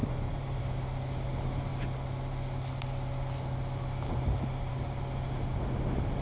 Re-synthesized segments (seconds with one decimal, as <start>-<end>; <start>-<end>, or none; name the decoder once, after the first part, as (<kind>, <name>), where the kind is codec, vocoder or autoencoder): 0.0-0.6 (vocoder, BigVGAN v2)